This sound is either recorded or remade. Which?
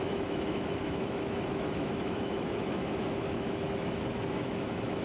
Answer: remade